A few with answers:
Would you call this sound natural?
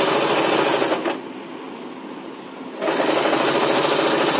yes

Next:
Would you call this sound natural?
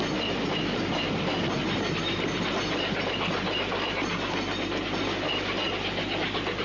yes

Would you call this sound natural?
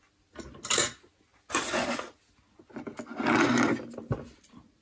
yes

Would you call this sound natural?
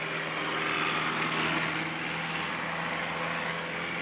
yes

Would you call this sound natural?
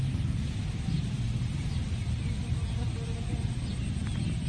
yes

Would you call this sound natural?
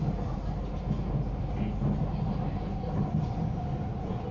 yes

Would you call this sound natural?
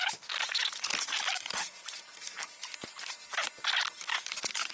yes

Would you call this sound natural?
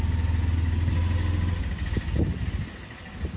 yes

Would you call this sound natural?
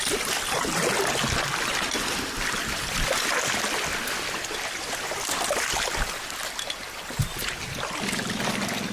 yes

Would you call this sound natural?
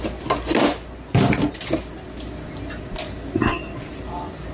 yes